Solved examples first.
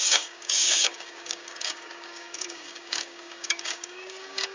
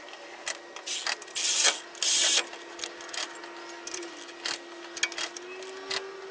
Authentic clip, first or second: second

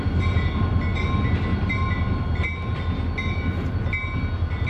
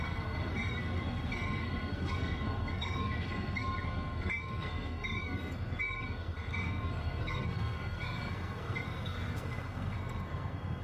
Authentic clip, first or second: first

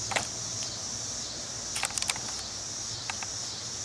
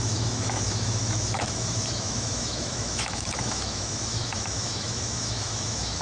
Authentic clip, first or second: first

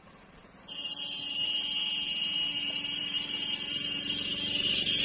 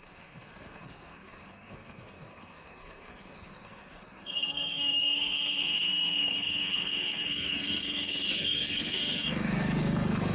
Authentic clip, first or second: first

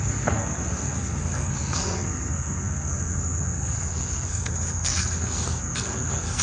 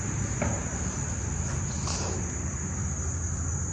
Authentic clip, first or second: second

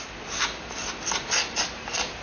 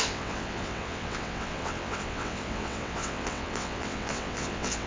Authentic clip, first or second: first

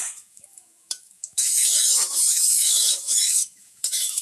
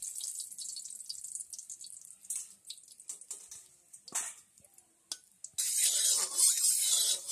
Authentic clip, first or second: second